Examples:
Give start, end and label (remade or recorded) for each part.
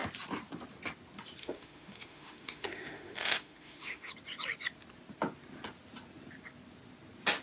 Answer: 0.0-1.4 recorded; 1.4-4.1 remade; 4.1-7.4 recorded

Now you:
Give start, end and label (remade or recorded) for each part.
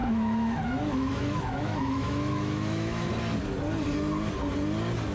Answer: 0.0-3.1 remade; 3.1-5.1 recorded